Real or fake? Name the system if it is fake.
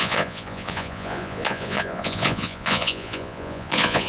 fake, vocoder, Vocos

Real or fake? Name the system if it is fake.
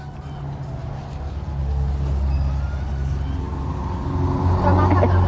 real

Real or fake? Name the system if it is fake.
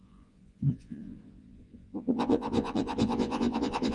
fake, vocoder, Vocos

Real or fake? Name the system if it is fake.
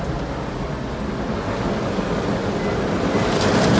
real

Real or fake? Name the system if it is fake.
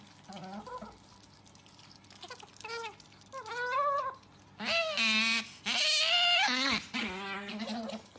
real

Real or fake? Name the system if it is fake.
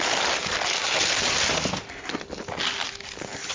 real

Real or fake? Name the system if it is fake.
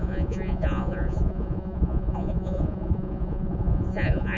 fake, vocoder, Vocos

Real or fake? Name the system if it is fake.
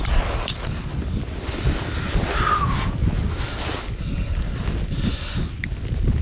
real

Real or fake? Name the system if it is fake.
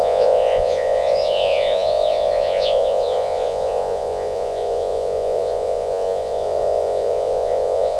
fake, vocoder, Vocos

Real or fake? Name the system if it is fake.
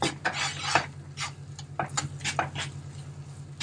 real